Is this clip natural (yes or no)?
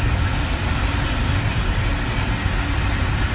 yes